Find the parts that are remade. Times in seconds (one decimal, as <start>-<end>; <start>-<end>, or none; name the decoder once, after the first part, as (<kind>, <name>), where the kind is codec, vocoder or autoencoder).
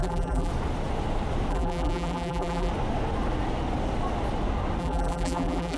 0.0-0.5 (vocoder, BigVGAN v2); 1.5-2.7; 4.8-5.8